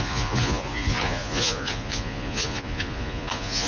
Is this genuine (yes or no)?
no